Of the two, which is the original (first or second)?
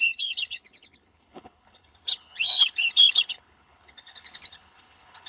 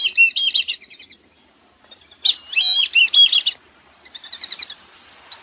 second